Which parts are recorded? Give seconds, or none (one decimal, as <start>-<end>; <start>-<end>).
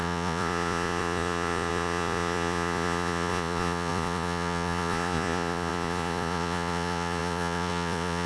none